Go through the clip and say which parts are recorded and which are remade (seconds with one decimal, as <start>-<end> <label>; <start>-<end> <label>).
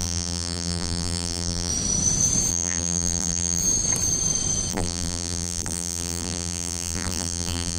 0.0-1.7 remade; 1.7-2.5 recorded; 2.5-3.6 remade; 3.6-4.7 recorded; 4.7-7.8 remade